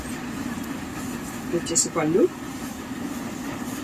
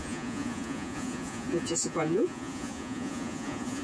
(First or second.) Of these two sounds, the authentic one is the first